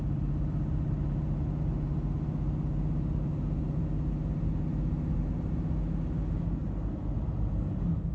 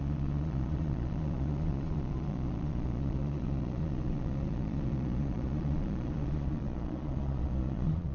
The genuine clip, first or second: first